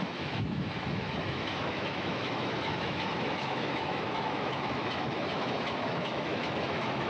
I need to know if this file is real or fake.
fake